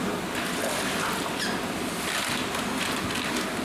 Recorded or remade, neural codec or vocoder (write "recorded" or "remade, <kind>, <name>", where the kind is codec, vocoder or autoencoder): recorded